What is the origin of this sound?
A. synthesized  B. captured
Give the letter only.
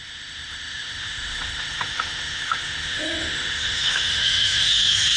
A